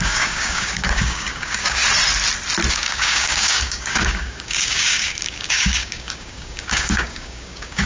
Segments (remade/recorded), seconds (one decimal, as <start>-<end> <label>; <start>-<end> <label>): 0.0-1.8 remade; 1.8-2.7 recorded; 2.7-7.8 remade